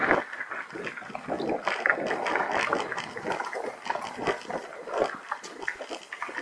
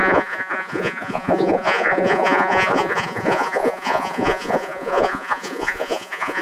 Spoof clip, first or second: second